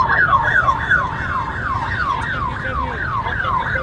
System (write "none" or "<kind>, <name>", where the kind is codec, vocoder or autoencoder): none